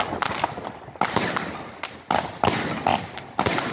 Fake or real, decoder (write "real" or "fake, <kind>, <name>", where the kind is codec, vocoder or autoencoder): real